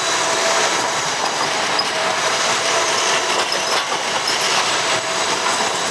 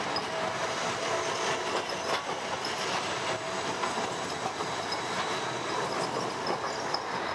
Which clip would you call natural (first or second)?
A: second